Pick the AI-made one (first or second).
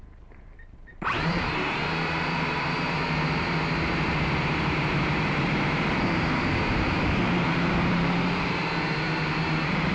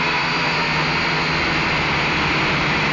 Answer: first